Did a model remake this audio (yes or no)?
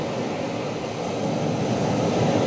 no